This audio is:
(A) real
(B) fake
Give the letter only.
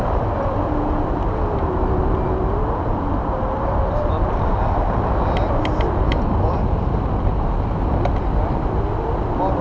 A